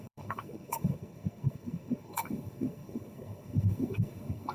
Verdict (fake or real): fake